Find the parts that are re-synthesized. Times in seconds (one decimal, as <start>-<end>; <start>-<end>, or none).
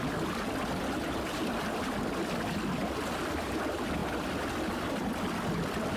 none